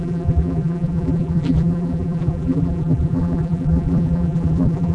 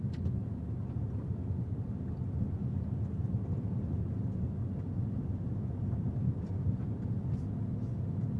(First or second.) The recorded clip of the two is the second